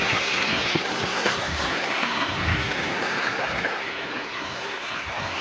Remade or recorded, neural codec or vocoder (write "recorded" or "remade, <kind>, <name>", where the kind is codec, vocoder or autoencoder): remade, codec, SNAC